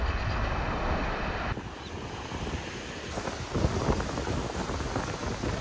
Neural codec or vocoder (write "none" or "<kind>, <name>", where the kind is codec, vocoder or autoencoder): none